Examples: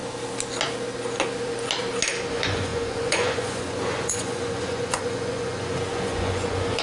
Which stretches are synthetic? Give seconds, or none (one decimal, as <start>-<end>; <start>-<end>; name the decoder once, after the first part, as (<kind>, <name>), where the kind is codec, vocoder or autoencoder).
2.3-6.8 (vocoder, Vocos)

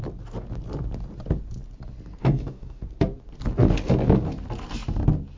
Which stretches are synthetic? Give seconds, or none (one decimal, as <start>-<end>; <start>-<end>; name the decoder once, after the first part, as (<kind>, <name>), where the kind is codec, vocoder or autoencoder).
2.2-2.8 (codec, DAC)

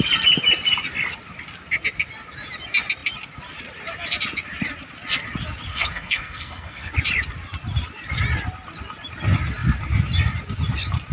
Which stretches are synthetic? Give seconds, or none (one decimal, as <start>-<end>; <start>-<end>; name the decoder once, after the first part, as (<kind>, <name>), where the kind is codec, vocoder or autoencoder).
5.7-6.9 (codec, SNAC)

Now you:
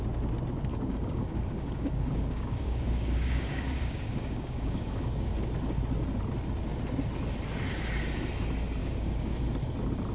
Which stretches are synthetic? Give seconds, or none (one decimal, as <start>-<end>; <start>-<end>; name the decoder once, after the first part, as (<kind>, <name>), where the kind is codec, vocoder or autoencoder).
0.7-5.3 (codec, DAC); 8.8-9.4

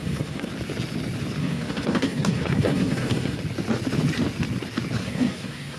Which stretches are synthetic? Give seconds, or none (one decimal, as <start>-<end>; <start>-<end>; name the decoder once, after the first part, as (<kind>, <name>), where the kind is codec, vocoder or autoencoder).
0.0-0.5 (codec, SNAC); 1.4-3.4; 5.0-5.8

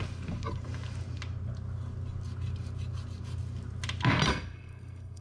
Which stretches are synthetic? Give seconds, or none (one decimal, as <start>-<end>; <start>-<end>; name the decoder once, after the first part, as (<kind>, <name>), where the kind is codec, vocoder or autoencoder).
4.3-5.2 (codec, SNAC)